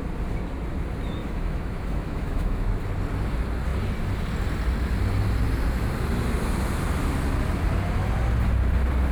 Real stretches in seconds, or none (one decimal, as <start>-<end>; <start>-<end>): 0.0-1.2; 2.8-9.1